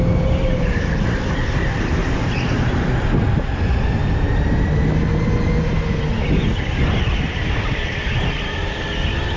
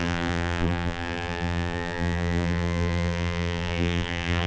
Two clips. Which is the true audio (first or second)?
first